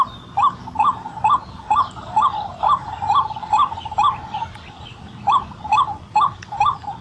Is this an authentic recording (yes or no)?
yes